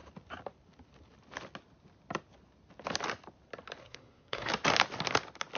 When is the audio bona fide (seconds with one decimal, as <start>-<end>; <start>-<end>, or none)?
0.0-3.8; 4.5-5.6